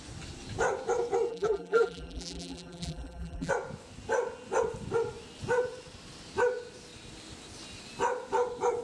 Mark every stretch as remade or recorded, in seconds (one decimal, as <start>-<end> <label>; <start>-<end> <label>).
0.0-1.3 recorded; 1.3-3.5 remade; 3.5-8.8 recorded